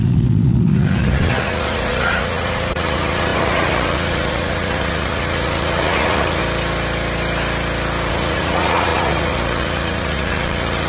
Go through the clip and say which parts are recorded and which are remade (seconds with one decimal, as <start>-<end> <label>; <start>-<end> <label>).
0.0-6.4 remade; 6.4-8.1 recorded; 8.1-10.9 remade